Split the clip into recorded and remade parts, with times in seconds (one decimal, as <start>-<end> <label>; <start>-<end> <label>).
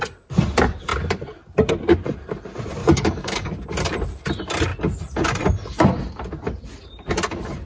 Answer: 0.0-2.8 recorded; 2.8-3.5 remade; 3.5-7.7 recorded